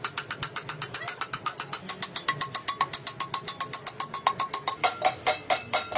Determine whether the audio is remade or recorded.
recorded